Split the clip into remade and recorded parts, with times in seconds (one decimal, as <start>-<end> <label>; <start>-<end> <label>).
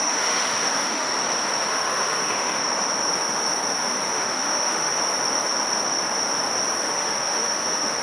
0.0-1.1 remade; 1.1-1.7 recorded; 1.7-2.6 remade; 2.6-3.8 recorded; 3.8-4.9 remade; 4.9-6.8 recorded; 6.8-8.0 remade